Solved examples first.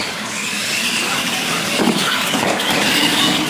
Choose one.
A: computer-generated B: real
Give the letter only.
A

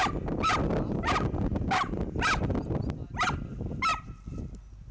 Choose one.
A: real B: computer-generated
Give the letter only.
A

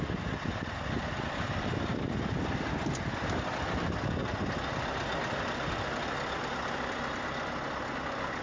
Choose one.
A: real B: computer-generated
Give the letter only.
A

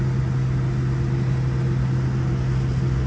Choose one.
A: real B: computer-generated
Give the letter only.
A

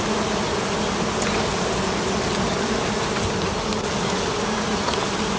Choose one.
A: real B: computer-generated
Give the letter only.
A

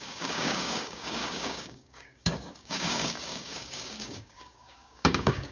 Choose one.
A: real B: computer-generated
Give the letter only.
B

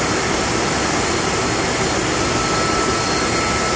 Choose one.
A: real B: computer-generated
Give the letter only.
A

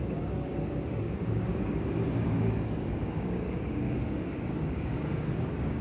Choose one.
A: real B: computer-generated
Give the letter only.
B